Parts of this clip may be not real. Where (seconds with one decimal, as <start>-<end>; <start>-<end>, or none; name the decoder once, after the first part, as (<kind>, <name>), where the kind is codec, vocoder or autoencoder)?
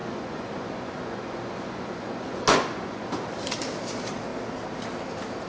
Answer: 0.0-3.1 (vocoder, Vocos)